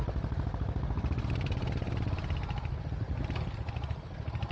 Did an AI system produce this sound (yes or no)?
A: no